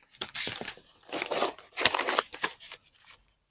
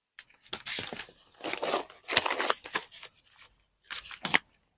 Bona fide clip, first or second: second